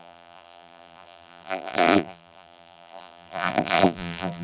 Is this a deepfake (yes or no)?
yes